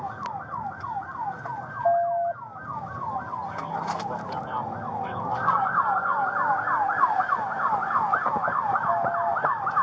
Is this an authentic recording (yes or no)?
yes